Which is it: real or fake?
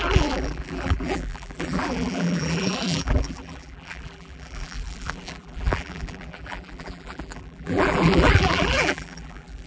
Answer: fake